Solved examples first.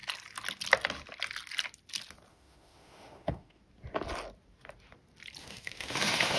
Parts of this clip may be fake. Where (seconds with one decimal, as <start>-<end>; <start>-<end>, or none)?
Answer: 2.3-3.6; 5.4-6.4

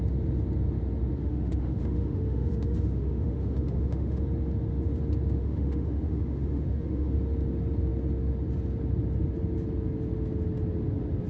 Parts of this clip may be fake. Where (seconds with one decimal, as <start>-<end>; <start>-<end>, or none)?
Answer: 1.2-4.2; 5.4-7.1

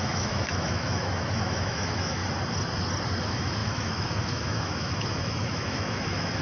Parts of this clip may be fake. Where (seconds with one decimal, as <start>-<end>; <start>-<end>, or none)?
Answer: 0.0-2.2; 3.2-6.4

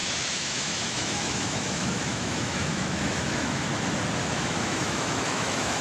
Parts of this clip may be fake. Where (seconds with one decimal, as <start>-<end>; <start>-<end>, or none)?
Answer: 0.0-3.7; 4.3-5.8